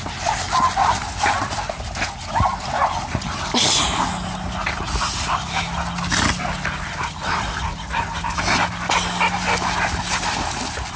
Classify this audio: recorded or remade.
recorded